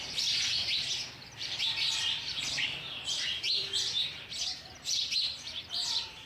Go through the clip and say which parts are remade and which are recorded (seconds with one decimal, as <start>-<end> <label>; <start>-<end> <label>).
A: 0.0-3.3 remade; 3.3-4.4 recorded; 4.4-6.3 remade